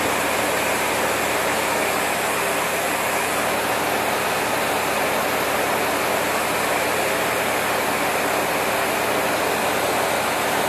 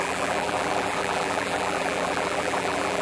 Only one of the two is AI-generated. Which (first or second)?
second